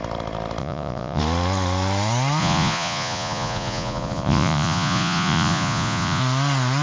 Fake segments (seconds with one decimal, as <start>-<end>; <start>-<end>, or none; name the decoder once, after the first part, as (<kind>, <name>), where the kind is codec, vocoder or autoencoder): 0.6-1.2 (vocoder, Vocos); 2.4-6.2